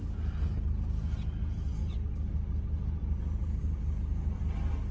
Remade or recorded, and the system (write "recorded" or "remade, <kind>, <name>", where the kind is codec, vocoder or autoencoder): recorded